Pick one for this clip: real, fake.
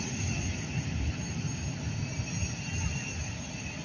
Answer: real